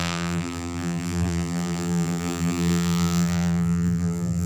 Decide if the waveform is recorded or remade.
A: remade